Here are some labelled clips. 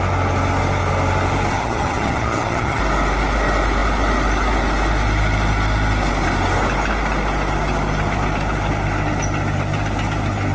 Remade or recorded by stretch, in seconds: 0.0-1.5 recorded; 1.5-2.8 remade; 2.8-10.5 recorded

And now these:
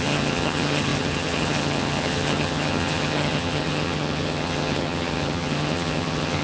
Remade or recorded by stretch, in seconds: 0.0-6.4 remade

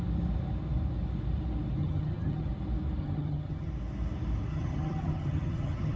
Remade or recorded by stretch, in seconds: 0.0-1.8 recorded; 1.8-2.5 remade; 2.5-3.0 recorded; 3.0-3.7 remade; 3.7-4.5 recorded; 4.5-6.0 remade